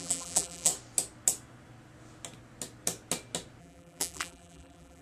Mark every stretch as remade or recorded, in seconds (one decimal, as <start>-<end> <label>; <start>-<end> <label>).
0.0-0.7 remade; 0.7-3.6 recorded; 3.6-5.0 remade